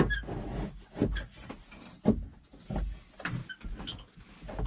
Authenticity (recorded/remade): recorded